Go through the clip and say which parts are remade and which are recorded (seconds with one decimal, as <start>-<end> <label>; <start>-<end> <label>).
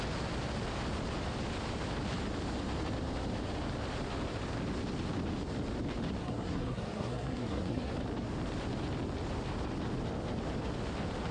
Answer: 0.0-6.2 recorded; 6.2-7.9 remade; 7.9-11.3 recorded